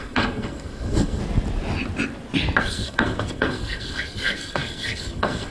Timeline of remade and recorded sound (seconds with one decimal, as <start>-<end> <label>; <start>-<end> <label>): 0.0-1.2 remade; 1.2-2.6 recorded; 2.6-5.5 remade